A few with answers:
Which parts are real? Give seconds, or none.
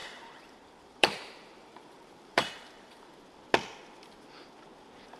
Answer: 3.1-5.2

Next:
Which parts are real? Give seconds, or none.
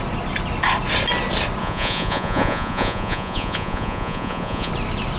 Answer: 0.0-1.6; 4.7-5.2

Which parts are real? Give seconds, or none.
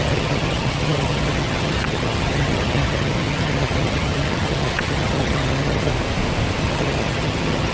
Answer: 5.9-6.6